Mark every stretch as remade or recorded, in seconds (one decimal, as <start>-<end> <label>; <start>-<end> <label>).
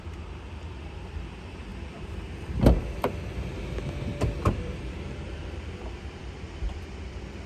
0.0-1.7 remade; 1.7-4.6 recorded; 4.6-7.5 remade